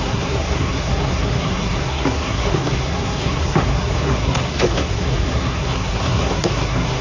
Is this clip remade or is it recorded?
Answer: remade